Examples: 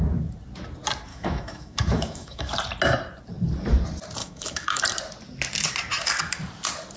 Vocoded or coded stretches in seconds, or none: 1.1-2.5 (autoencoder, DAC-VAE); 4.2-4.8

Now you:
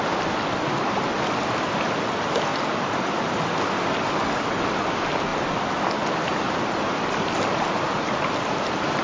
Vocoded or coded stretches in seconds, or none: none

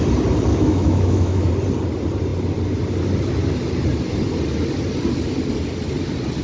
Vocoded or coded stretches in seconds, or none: 0.5-1.5 (autoencoder, DAC-VAE)

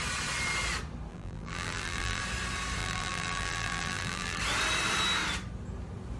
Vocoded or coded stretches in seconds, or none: 1.1-2.2 (vocoder, BigVGAN v2); 2.8-4.4

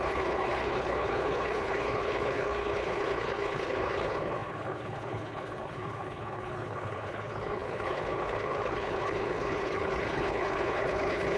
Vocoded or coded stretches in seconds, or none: 0.0-11.4 (codec, HILCodec)

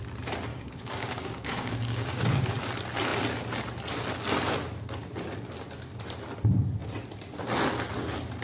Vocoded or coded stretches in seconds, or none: 0.5-2.5 (codec, DAC)

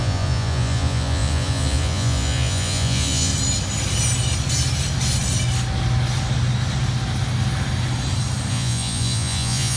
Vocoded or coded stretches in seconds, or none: 0.0-3.3 (vocoder, Vocos); 8.5-9.8

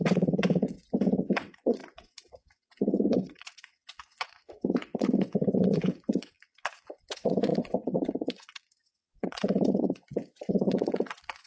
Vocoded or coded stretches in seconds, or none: 0.0-11.5 (vocoder, WaveNeXt)